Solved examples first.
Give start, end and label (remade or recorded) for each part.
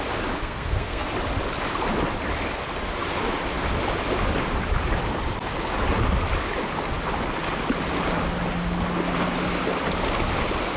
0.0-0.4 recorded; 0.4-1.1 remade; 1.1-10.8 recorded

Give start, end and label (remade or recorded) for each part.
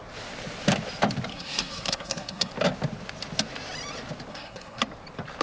0.0-1.3 recorded; 1.3-2.5 remade; 2.5-4.3 recorded; 4.3-4.8 remade; 4.8-5.4 recorded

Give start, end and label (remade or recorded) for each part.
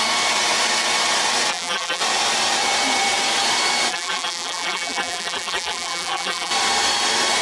0.0-1.5 recorded; 1.5-2.0 remade; 2.0-3.9 recorded; 3.9-6.5 remade; 6.5-7.4 recorded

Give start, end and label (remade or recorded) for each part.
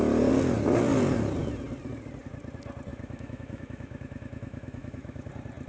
0.0-2.9 recorded; 2.9-5.3 remade; 5.3-5.7 recorded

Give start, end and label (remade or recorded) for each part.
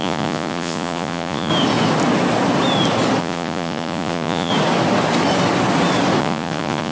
0.0-1.5 remade; 1.5-3.2 recorded; 3.2-4.5 remade; 4.5-6.2 recorded; 6.2-6.9 remade